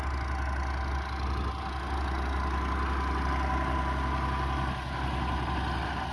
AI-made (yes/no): no